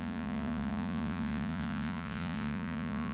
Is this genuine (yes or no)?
no